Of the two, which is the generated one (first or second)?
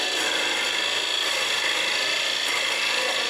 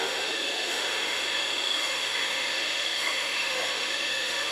second